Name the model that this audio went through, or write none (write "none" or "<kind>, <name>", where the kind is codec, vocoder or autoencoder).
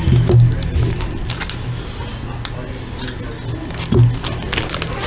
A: none